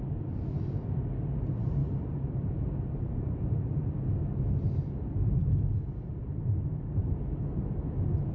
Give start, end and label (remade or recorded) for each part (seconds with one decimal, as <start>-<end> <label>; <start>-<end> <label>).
0.0-1.8 recorded; 1.8-3.9 remade; 3.9-5.4 recorded; 5.4-7.0 remade; 7.0-8.3 recorded